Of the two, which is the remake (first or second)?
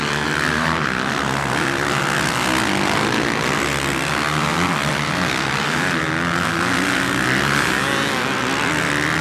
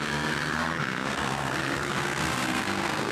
second